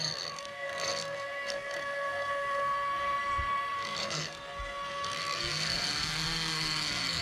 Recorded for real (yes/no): no